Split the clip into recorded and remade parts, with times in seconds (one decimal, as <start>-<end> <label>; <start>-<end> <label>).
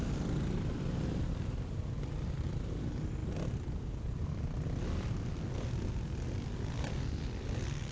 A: 0.0-7.9 recorded